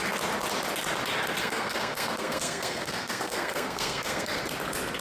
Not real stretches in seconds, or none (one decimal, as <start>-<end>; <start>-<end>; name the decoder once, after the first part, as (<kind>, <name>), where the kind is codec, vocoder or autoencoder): 1.4-4.4 (codec, SNAC)